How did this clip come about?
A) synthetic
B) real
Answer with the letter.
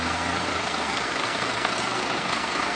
A